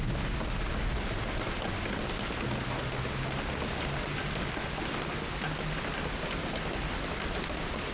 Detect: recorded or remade recorded